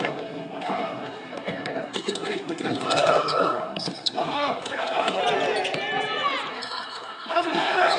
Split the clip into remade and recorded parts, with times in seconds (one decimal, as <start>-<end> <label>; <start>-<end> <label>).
0.0-5.2 remade; 5.2-6.5 recorded; 6.5-8.0 remade